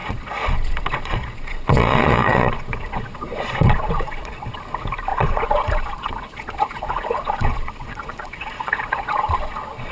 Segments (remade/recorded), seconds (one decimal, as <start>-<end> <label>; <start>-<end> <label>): 0.0-4.6 remade; 4.6-5.1 recorded; 5.1-9.9 remade